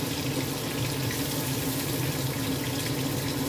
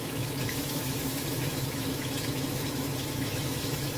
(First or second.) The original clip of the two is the first